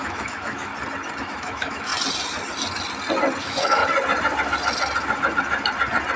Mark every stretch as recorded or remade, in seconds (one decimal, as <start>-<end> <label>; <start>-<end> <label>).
0.0-0.7 remade; 0.7-1.2 recorded; 1.2-1.9 remade; 1.9-3.4 recorded; 3.4-3.8 remade; 3.8-6.2 recorded